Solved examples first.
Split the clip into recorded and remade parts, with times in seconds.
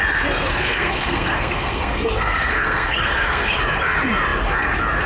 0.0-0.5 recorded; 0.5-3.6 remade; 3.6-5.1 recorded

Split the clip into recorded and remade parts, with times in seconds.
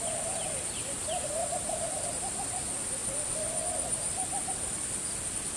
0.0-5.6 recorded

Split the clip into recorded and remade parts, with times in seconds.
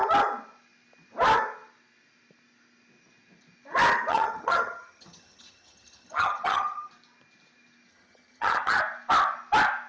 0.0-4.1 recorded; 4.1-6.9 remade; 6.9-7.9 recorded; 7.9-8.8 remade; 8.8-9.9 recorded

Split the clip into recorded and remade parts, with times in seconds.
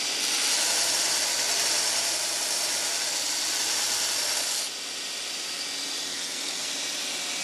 0.0-6.1 recorded; 6.1-6.7 remade; 6.7-7.4 recorded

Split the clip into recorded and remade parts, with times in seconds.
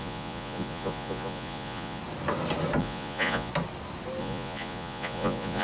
0.0-2.0 remade; 2.0-2.8 recorded; 2.8-3.5 remade; 3.5-4.2 recorded; 4.2-5.6 remade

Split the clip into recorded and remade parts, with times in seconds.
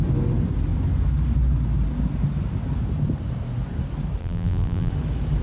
0.0-4.2 recorded; 4.2-4.9 remade; 4.9-5.4 recorded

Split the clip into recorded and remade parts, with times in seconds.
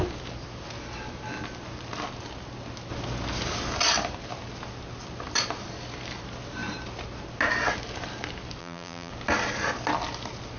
0.0-8.6 recorded; 8.6-9.1 remade; 9.1-10.6 recorded